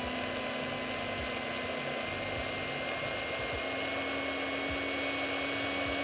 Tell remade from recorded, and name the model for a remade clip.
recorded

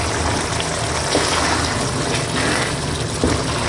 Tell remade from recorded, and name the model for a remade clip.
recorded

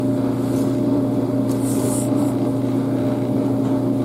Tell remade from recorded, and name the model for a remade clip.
recorded